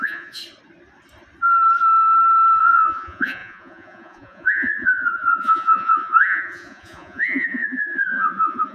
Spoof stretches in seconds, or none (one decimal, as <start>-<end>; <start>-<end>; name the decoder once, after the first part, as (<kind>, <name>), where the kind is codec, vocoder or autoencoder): 0.0-0.4 (vocoder, Vocos); 2.6-8.7